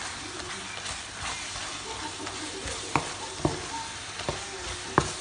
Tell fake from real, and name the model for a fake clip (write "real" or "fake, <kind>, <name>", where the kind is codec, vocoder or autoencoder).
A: real